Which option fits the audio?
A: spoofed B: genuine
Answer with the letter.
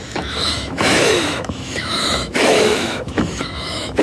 A